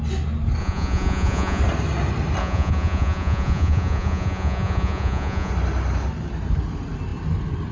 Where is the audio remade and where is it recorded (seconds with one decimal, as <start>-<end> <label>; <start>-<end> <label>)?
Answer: 0.0-0.6 recorded; 0.6-1.6 remade; 1.6-2.4 recorded; 2.4-5.5 remade; 5.5-7.7 recorded